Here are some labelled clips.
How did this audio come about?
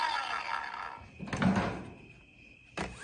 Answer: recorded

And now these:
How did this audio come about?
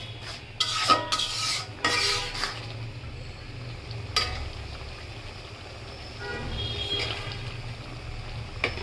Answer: recorded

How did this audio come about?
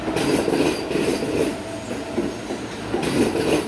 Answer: recorded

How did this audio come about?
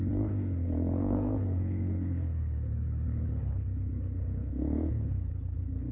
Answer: remade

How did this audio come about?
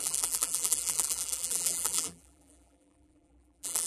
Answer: remade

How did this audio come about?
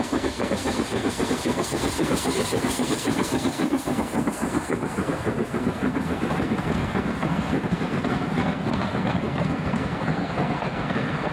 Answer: remade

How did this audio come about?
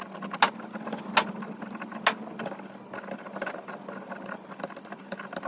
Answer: recorded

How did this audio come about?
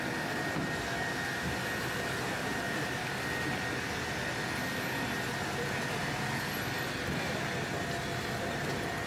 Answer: recorded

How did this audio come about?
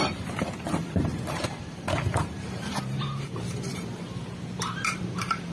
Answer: remade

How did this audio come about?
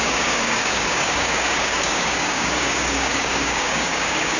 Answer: remade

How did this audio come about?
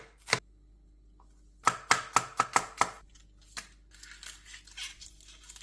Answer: recorded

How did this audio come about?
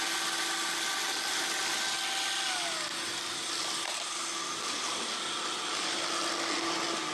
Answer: recorded